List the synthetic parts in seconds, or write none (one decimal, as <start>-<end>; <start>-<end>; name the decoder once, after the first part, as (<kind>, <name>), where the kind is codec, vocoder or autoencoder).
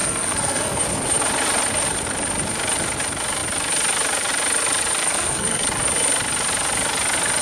0.0-0.8 (codec, SNAC); 5.0-5.7